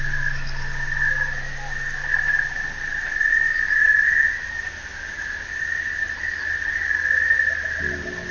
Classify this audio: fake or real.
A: real